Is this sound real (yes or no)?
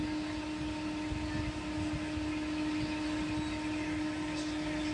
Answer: yes